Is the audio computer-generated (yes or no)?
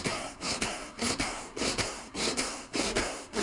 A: yes